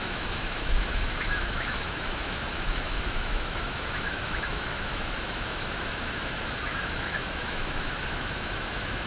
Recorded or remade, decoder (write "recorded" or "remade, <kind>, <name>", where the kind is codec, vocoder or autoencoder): remade, autoencoder, DAC-VAE